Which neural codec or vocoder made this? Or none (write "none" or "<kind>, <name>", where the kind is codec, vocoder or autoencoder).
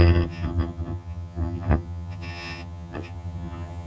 vocoder, HiFi-GAN